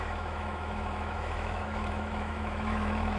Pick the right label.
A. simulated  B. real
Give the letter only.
A